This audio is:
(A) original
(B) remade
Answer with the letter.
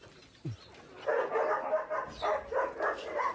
A